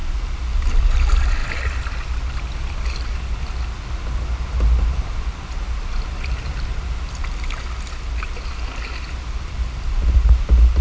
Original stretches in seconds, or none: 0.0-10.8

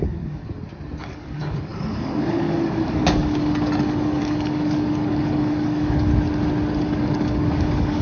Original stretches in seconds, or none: 0.4-1.0; 6.1-6.8